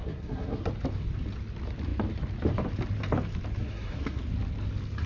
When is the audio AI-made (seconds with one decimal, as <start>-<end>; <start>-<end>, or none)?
0.0-0.7; 3.6-4.2